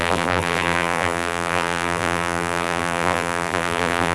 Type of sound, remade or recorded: remade